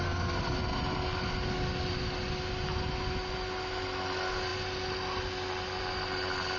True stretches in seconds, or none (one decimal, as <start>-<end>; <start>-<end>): 0.0-6.6

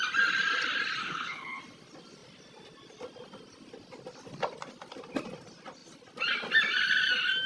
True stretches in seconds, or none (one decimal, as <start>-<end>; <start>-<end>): 0.0-1.0; 1.6-7.5

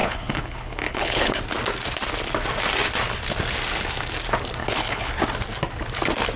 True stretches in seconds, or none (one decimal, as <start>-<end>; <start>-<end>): 1.4-4.6; 5.1-6.4

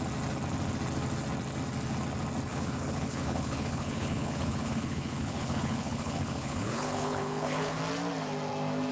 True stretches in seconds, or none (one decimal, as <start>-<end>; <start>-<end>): 0.0-2.5; 7.8-8.9